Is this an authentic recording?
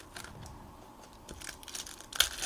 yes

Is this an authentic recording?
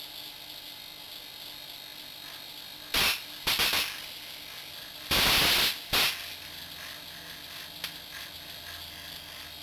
yes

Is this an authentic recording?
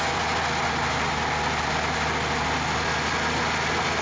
yes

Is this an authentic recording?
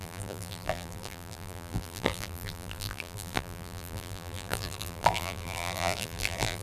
no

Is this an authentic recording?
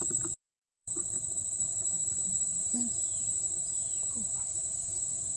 no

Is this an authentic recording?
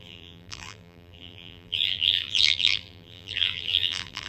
no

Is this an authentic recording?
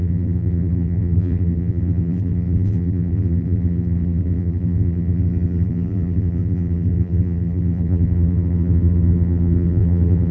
no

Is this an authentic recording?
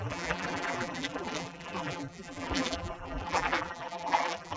no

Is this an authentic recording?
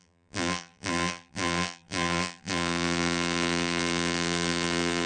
no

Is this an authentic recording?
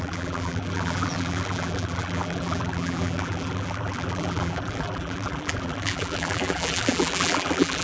no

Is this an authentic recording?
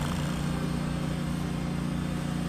yes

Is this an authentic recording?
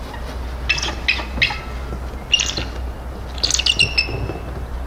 yes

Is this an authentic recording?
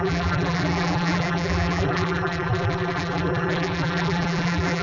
no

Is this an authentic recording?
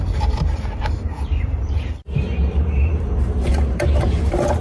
no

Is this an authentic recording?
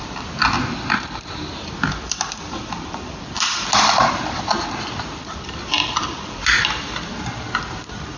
no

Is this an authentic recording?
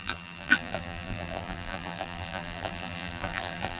no